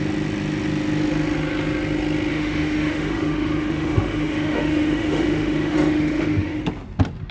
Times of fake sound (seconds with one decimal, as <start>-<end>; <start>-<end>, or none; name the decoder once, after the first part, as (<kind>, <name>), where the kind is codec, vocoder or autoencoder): 2.3-6.6 (autoencoder, DAC-VAE)